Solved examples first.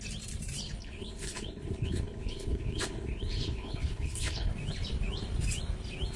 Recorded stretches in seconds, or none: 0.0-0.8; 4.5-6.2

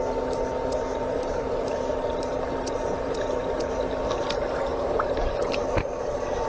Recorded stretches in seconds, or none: 0.0-0.9; 3.8-4.7; 5.4-6.5

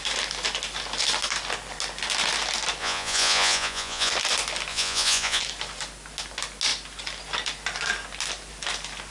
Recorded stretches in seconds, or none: 0.0-2.8; 4.1-4.7; 5.4-9.1

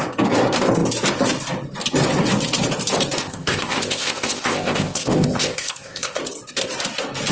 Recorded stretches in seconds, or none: 0.0-3.2; 6.2-7.3